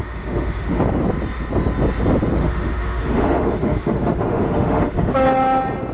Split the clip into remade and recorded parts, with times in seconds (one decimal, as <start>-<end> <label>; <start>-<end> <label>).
0.0-0.8 remade; 0.8-2.4 recorded; 2.4-5.1 remade; 5.1-5.9 recorded